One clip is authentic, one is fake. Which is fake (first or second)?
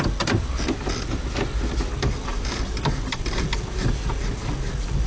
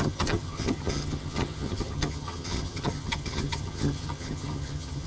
second